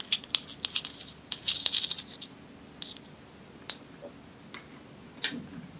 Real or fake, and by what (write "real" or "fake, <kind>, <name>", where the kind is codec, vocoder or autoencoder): real